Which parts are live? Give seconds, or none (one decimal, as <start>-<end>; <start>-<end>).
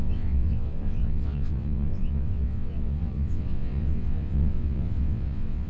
none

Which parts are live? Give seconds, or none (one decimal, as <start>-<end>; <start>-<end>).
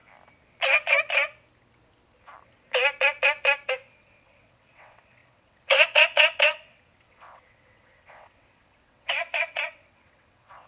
0.0-3.7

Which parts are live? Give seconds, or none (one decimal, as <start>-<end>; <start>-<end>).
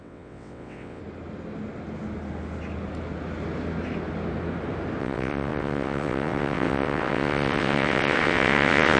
1.0-5.0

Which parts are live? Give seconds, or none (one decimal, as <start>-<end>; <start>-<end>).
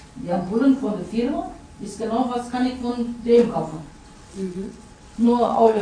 0.0-3.7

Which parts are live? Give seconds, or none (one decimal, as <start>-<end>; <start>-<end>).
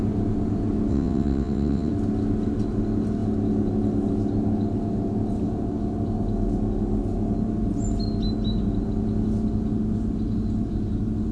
0.0-0.9; 1.9-11.3